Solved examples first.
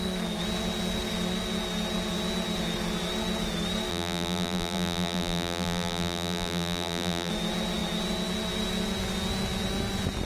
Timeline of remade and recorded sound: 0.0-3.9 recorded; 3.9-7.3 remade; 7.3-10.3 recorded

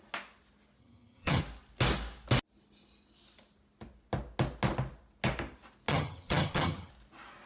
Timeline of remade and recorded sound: 0.0-0.8 recorded; 0.8-1.4 remade; 1.4-5.9 recorded; 5.9-6.9 remade; 6.9-7.5 recorded

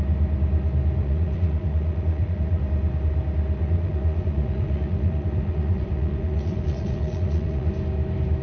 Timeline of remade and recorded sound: 0.0-1.0 recorded; 1.0-2.6 remade; 2.6-3.6 recorded; 3.6-7.7 remade; 7.7-8.4 recorded

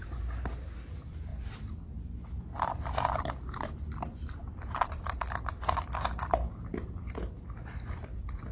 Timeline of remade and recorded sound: 0.0-8.5 recorded

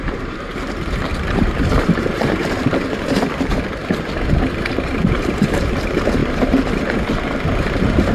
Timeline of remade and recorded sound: 0.0-3.8 remade; 3.8-4.5 recorded; 4.5-8.1 remade

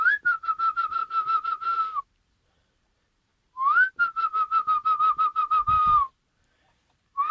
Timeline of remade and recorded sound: 0.0-1.0 remade; 1.0-2.0 recorded; 2.0-3.3 remade; 3.3-5.0 recorded; 5.0-7.3 remade

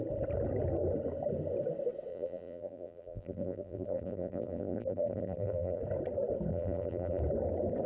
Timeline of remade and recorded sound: 0.0-2.1 recorded; 2.1-5.8 remade; 5.8-6.5 recorded; 6.5-7.2 remade; 7.2-7.9 recorded

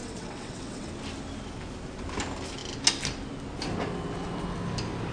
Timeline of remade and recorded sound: 0.0-0.9 remade; 0.9-5.1 recorded